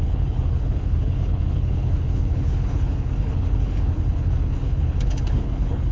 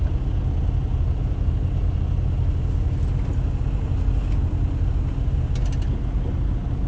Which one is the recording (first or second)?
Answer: second